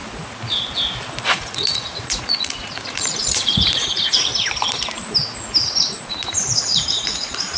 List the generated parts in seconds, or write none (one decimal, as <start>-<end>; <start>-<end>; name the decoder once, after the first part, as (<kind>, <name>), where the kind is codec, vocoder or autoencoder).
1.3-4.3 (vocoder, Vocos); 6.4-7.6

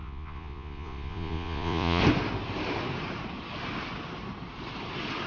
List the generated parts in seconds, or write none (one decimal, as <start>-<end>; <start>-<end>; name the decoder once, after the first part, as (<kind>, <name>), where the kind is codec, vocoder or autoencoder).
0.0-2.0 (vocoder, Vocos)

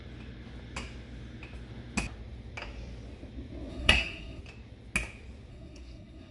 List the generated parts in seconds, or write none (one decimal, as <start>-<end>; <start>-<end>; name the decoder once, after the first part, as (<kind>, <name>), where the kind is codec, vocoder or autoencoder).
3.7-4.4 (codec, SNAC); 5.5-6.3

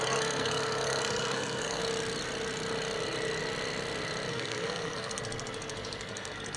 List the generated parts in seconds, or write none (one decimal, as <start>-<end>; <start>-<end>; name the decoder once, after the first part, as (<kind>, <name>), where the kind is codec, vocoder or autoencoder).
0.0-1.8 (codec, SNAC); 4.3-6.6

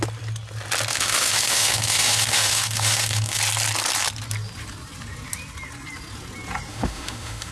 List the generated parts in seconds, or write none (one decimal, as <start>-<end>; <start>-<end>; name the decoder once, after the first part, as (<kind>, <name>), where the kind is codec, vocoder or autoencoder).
0.9-3.4 (autoencoder, DAC-VAE); 6.7-7.5

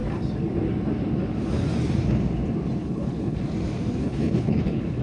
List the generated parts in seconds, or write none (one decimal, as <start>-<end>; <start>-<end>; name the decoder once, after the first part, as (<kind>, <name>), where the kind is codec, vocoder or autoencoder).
2.8-3.4 (codec, HILCodec); 4.0-5.0

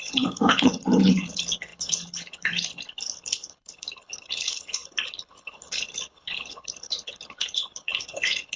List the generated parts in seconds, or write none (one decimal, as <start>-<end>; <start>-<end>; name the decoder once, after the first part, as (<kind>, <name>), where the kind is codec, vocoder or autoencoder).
0.0-8.6 (codec, HILCodec)

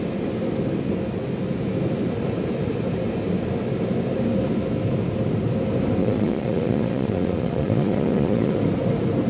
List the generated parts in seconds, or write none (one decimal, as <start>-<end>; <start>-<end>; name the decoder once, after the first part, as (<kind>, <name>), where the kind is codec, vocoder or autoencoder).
6.0-8.6 (vocoder, Vocos)